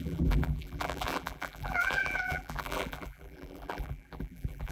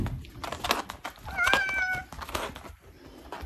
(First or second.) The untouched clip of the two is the second